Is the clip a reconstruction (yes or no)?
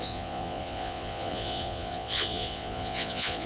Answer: yes